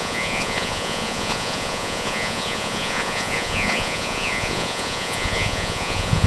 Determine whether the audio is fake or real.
fake